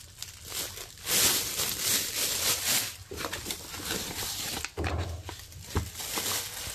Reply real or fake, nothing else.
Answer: real